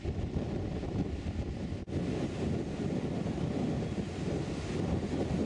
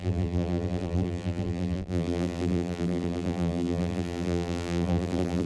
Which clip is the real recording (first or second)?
first